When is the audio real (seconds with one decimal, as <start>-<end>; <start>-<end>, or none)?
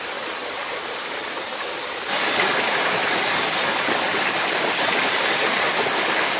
0.0-6.4